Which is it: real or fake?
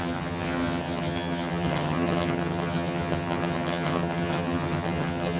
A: fake